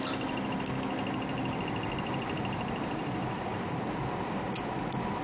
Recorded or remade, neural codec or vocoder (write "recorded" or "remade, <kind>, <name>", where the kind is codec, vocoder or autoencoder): recorded